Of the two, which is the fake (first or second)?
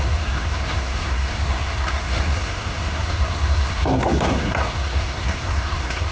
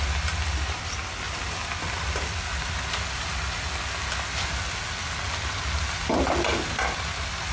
first